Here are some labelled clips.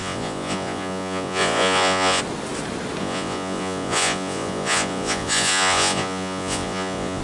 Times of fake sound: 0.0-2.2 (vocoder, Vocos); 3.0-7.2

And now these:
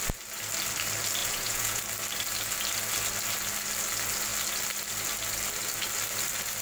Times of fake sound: 1.2-1.8 (vocoder, Vocos)

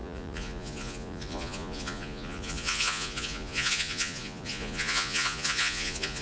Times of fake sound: 0.0-6.2 (vocoder, Vocos)

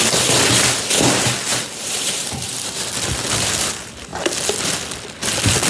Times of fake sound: 1.5-2.8 (vocoder, BigVGAN v2)

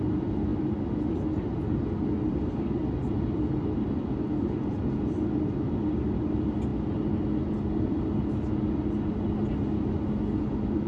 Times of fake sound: none